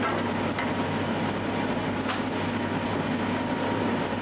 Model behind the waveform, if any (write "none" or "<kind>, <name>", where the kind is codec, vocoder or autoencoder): none